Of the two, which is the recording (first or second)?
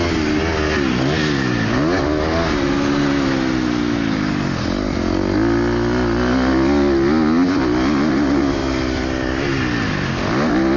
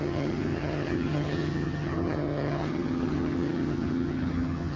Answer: first